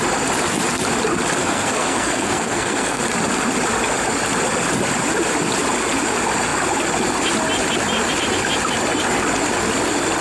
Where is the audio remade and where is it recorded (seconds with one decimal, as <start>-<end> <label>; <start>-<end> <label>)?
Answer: 0.0-1.4 recorded; 1.4-3.0 remade; 3.0-10.2 recorded